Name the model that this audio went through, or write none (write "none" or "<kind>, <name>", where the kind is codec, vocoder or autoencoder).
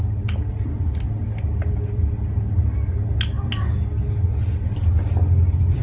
none